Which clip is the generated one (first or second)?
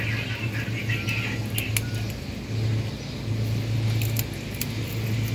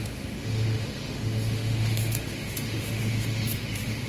second